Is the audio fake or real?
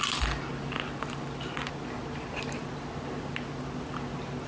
real